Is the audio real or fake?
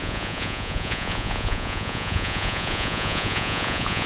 fake